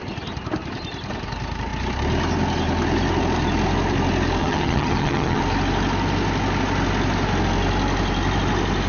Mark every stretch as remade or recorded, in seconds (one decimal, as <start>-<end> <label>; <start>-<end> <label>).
0.0-4.4 recorded; 4.4-5.4 remade; 5.4-8.9 recorded